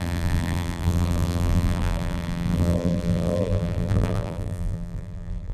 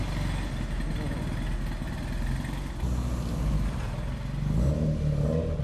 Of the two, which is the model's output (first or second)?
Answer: first